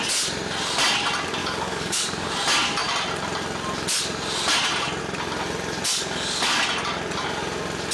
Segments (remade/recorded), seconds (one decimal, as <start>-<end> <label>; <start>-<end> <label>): 0.0-1.4 recorded; 1.4-2.3 remade; 2.3-5.9 recorded; 5.9-6.6 remade; 6.6-7.9 recorded